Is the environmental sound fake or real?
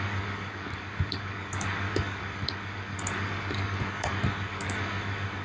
fake